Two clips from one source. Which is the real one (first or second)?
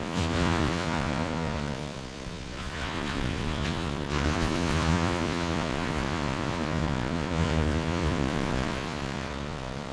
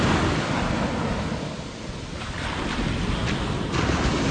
second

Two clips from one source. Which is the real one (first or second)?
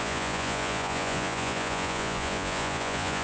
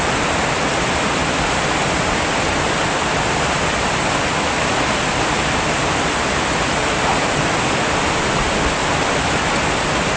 second